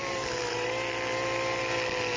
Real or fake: real